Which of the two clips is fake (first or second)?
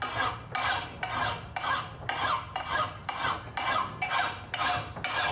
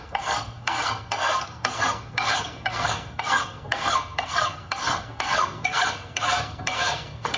second